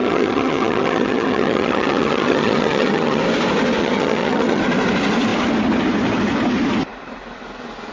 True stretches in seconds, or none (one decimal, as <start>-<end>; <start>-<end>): 3.2-3.8; 4.6-7.9